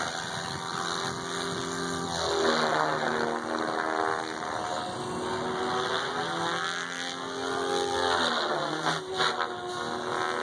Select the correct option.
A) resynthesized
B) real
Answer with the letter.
B